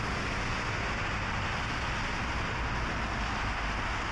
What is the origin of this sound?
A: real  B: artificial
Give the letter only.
A